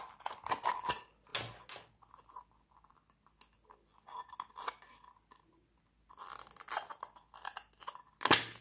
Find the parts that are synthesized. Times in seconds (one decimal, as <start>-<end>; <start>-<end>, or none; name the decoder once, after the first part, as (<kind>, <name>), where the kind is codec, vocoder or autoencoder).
none